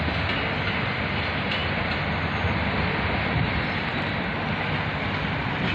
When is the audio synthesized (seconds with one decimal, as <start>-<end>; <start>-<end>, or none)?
none